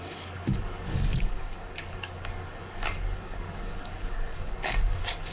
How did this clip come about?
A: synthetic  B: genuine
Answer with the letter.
A